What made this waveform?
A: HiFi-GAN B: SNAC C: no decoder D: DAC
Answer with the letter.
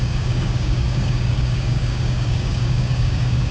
D